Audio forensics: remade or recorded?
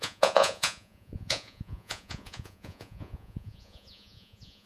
remade